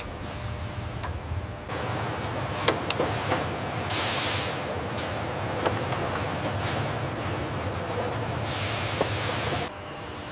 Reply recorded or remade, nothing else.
recorded